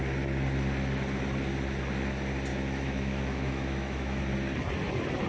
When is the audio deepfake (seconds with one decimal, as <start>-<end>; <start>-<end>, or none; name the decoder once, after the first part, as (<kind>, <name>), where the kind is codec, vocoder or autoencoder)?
2.5-4.2 (autoencoder, DAC-VAE)